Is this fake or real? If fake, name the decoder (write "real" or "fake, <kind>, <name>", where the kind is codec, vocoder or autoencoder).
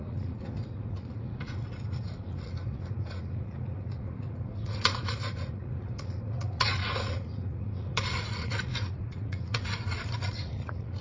fake, vocoder, Vocos